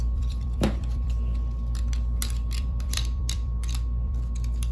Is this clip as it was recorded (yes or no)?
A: no